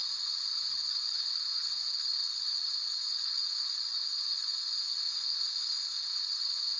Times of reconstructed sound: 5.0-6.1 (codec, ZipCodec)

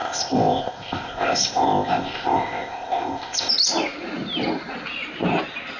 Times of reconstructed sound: 0.0-3.5 (codec, ZipCodec)

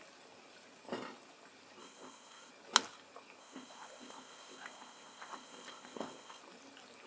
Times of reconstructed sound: 1.8-2.5 (codec, ZipCodec); 3.4-6.4